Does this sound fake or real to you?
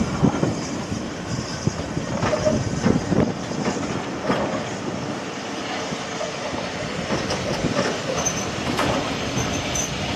fake